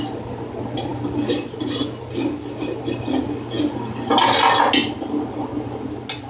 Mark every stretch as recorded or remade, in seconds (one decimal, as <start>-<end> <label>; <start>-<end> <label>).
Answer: 0.0-6.3 recorded